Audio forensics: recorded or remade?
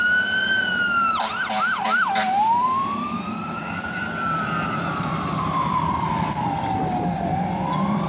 remade